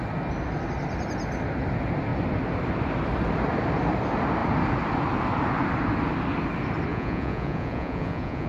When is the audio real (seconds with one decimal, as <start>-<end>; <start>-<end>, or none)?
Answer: 0.0-6.9